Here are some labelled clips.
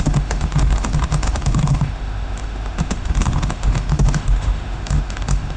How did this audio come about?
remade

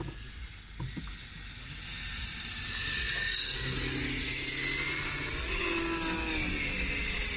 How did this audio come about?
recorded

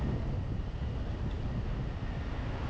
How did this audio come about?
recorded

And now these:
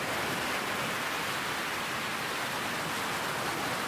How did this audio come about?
recorded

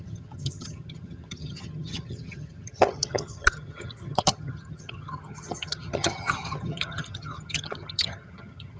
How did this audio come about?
remade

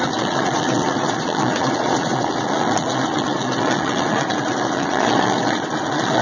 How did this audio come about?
remade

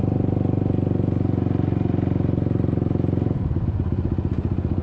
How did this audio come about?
recorded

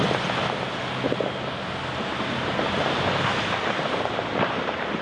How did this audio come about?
recorded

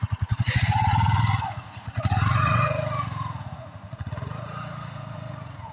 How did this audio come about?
remade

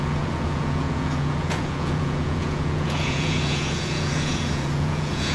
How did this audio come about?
remade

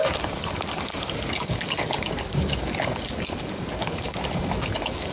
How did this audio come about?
remade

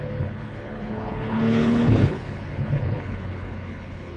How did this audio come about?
remade